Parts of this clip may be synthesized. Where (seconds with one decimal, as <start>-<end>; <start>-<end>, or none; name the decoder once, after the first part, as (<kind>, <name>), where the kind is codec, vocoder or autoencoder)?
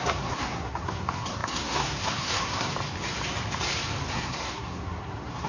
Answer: 0.0-2.7 (codec, SNAC); 4.1-5.5